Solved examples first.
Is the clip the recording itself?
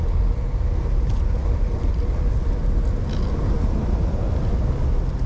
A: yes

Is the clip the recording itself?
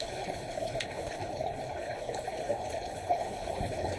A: no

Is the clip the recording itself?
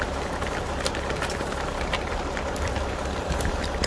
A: yes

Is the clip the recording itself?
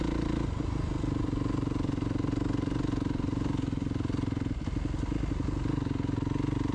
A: yes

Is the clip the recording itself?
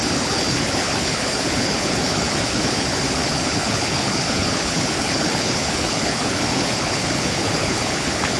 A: no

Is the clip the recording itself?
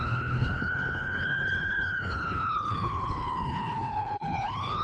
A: no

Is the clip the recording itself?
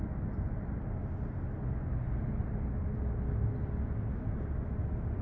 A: yes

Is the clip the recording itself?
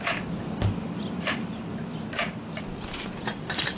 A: yes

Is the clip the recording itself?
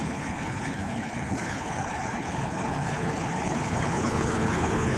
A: no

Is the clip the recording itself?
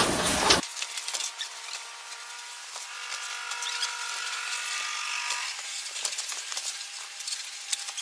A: yes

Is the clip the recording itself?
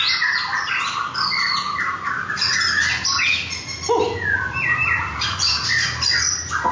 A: yes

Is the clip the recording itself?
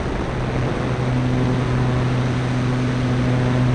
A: yes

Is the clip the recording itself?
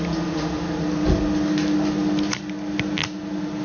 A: yes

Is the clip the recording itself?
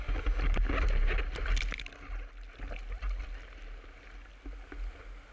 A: yes